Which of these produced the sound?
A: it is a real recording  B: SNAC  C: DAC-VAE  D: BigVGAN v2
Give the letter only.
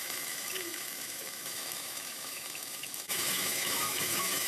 C